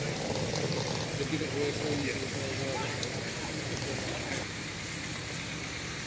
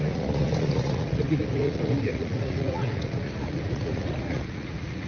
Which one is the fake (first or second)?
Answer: second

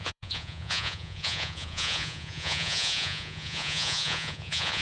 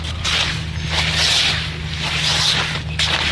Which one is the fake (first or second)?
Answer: first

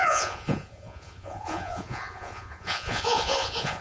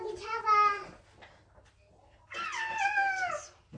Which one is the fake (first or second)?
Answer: first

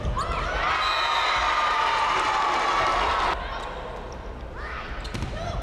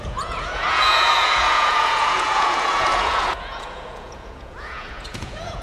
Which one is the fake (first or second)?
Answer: second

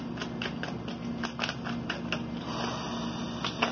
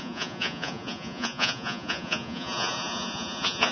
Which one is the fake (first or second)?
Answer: second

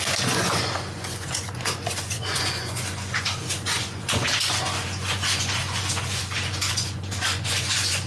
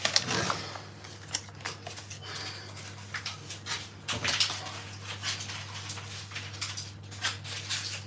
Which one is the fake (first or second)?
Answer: first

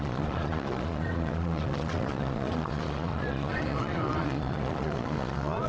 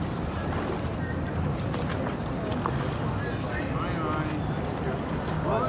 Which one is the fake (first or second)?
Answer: first